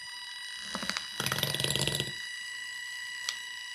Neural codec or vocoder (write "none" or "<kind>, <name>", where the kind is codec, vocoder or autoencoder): none